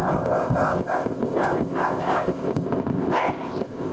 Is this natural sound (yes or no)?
no